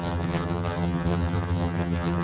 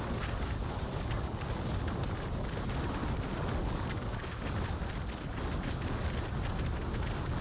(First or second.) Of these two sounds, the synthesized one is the first